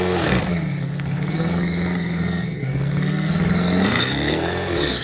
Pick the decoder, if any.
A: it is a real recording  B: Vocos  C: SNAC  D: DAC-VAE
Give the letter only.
C